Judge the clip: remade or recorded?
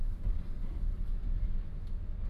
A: recorded